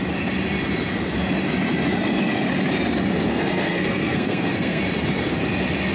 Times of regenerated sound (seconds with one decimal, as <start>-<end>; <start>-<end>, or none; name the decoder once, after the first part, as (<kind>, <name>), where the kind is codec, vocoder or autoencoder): 3.3-4.8 (codec, SNAC)